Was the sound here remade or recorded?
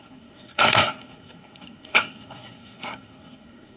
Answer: remade